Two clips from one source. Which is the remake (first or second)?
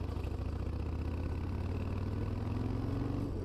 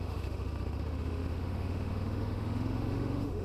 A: second